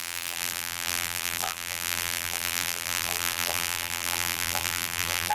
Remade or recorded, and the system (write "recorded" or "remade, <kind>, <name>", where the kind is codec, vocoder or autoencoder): remade, vocoder, BigVGAN v2